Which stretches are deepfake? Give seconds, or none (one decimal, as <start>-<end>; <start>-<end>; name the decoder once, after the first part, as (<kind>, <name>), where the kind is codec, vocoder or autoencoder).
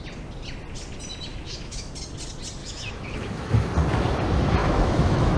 1.3-1.9 (autoencoder, DAC-VAE); 2.6-3.5; 4.6-5.4